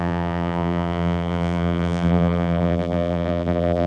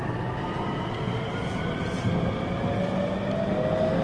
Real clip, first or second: second